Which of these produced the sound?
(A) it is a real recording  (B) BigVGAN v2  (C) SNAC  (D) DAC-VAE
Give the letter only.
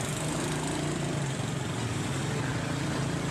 A